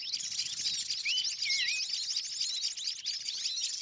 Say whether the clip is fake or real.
real